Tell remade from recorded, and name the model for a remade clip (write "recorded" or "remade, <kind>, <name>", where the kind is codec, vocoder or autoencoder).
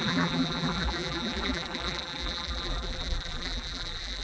remade, vocoder, BigVGAN v2